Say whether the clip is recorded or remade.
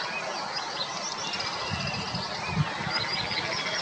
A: recorded